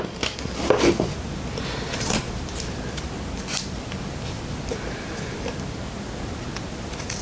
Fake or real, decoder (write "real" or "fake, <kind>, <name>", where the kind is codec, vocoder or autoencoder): real